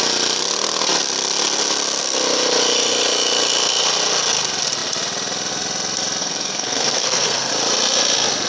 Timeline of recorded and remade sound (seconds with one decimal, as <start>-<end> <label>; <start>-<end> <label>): 0.0-6.2 recorded; 6.2-7.5 remade; 7.5-8.5 recorded